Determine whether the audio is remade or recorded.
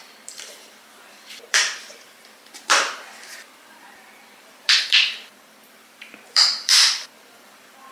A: remade